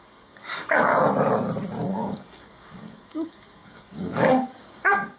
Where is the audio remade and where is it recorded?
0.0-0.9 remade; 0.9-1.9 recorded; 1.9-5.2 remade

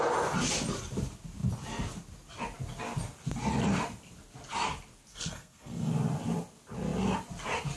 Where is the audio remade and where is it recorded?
0.0-5.1 recorded; 5.1-5.9 remade; 5.9-7.8 recorded